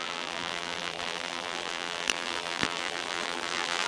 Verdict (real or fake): fake